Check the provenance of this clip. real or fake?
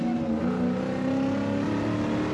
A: real